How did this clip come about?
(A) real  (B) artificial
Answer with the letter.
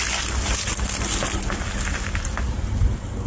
A